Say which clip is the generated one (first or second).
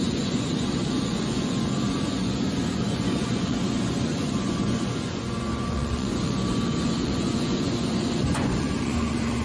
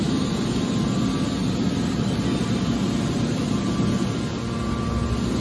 first